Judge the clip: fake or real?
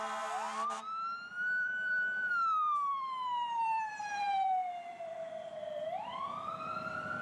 fake